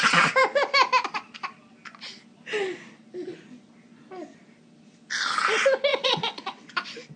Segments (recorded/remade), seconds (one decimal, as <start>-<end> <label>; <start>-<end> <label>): 0.0-5.9 recorded; 5.9-6.7 remade; 6.7-7.2 recorded